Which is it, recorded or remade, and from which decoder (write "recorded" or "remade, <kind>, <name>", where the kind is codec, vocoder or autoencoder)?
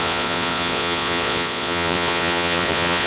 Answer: remade, vocoder, Vocos